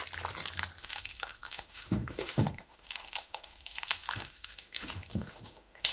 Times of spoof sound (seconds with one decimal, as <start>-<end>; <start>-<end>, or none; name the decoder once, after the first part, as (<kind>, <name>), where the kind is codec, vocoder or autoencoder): 0.8-5.9 (autoencoder, DAC-VAE)